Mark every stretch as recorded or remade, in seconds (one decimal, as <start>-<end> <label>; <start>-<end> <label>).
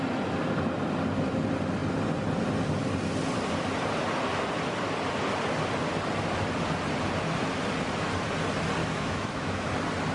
0.0-8.8 recorded; 8.8-9.7 remade; 9.7-10.1 recorded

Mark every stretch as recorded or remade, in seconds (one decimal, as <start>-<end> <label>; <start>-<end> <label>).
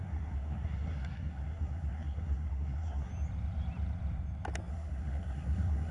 0.0-3.1 remade; 3.1-4.7 recorded; 4.7-5.9 remade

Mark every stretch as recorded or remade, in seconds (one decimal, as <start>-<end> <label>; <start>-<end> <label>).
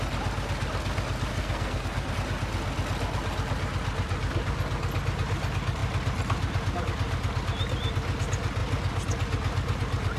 0.0-1.3 recorded; 1.3-2.1 remade; 2.1-10.2 recorded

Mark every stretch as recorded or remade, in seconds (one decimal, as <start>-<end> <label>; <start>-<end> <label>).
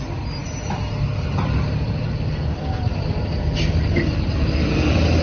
0.0-5.2 recorded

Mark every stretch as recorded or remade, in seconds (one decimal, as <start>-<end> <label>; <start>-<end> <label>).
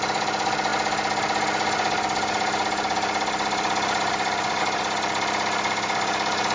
0.0-6.5 recorded